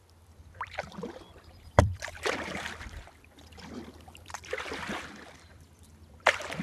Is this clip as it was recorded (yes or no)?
no